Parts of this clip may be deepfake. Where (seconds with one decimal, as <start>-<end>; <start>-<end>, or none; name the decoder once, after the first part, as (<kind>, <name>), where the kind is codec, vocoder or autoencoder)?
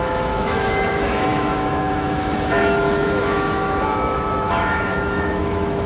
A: 0.0-5.9 (autoencoder, DAC-VAE)